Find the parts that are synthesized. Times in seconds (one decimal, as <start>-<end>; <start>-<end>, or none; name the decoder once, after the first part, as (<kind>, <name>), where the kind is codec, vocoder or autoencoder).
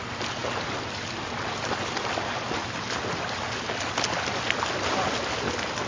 none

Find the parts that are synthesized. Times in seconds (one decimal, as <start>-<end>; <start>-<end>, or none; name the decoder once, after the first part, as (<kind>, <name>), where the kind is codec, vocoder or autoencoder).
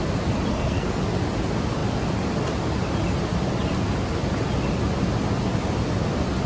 0.5-1.0 (codec, SNAC)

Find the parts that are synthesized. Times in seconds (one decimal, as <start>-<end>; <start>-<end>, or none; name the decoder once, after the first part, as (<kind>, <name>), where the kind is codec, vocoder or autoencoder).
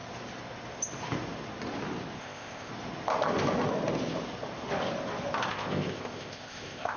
2.2-2.7 (codec, ZipCodec); 5.5-7.0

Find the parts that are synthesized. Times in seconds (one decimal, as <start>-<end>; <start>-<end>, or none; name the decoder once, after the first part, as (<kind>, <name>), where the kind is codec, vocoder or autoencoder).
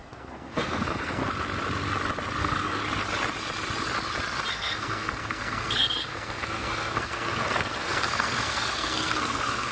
0.0-1.2 (codec, SNAC); 2.4-2.8; 4.5-9.7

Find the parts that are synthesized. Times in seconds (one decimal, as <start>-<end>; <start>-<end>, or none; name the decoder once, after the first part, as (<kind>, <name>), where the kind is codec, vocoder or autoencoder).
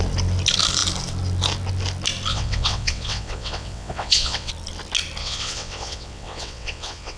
2.3-4.5 (vocoder, WaveNeXt); 5.2-7.2